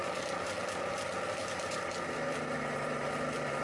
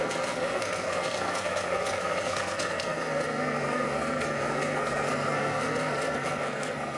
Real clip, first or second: first